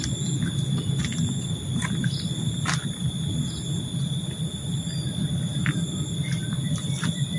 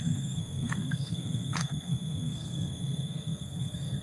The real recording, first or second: first